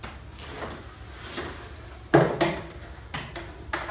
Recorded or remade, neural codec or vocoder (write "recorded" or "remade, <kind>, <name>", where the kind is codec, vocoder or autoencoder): recorded